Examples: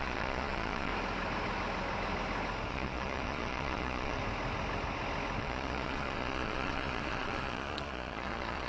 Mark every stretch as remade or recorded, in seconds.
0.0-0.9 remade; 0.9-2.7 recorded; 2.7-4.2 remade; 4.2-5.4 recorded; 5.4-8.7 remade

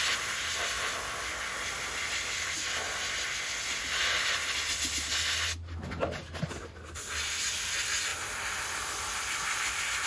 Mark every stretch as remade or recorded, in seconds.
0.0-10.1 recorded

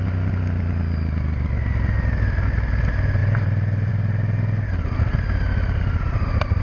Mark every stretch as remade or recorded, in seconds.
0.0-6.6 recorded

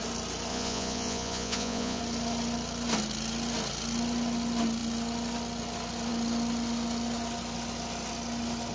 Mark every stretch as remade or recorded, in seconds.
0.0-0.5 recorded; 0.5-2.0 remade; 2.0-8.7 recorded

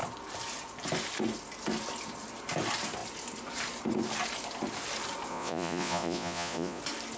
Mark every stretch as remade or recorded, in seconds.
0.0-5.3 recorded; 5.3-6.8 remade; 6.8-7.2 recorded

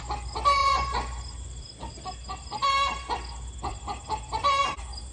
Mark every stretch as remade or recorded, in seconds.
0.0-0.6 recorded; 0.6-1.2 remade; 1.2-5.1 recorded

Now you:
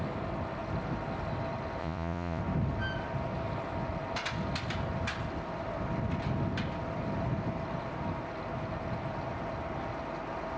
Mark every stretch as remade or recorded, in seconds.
0.0-1.8 recorded; 1.8-2.4 remade; 2.4-10.6 recorded

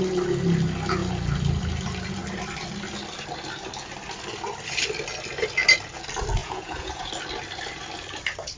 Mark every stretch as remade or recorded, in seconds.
0.0-6.4 recorded; 6.4-7.1 remade; 7.1-8.6 recorded